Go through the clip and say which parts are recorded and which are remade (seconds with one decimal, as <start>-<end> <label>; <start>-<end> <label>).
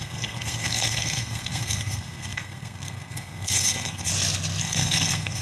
0.0-4.1 remade; 4.1-4.6 recorded; 4.6-5.4 remade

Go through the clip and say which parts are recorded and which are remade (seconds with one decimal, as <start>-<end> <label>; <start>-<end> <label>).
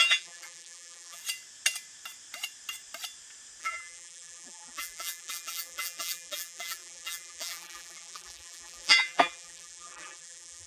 0.0-1.2 remade; 1.2-3.6 recorded; 3.6-10.7 remade